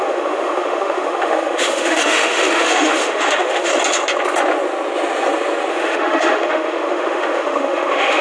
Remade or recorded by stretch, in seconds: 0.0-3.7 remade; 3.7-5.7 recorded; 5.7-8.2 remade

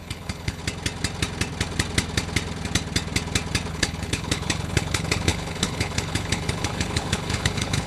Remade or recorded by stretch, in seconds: 0.0-0.6 remade; 0.6-3.7 recorded; 3.7-7.9 remade

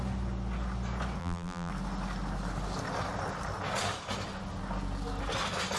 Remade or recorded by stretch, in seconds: 0.0-1.2 recorded; 1.2-1.7 remade; 1.7-5.8 recorded

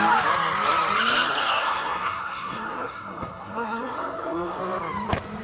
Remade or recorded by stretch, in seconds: 0.0-1.4 recorded; 1.4-4.6 remade; 4.6-5.4 recorded

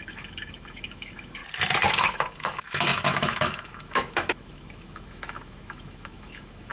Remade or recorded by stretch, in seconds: 0.0-1.4 remade; 1.4-1.9 recorded; 1.9-6.7 remade

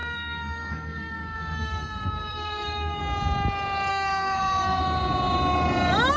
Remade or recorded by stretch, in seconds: 0.0-3.0 remade; 3.0-3.9 recorded; 3.9-4.8 remade; 4.8-6.2 recorded

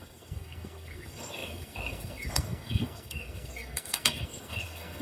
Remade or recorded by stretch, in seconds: 0.0-5.0 remade